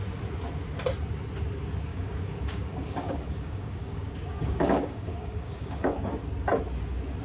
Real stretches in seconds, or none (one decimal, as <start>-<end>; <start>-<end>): 0.0-1.9; 6.2-7.2